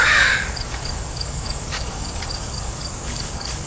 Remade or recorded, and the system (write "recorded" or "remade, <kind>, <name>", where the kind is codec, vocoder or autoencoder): remade, codec, DAC